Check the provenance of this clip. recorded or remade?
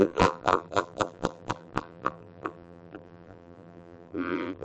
remade